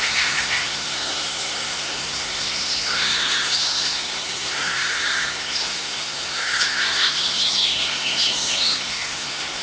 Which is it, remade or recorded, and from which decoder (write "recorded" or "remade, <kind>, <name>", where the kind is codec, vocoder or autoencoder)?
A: remade, codec, SNAC